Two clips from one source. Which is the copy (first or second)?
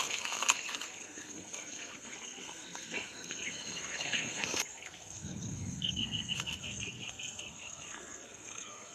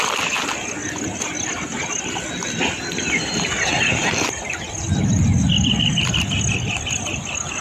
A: first